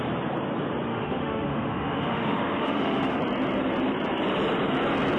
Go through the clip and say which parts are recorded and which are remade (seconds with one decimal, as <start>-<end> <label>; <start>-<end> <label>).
0.0-0.9 recorded; 0.9-3.2 remade; 3.2-5.2 recorded